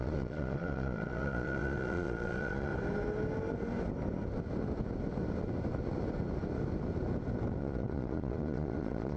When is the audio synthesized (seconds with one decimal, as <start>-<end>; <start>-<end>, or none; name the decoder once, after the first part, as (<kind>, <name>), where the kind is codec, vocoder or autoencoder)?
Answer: 0.0-2.7 (vocoder, Vocos); 7.6-9.2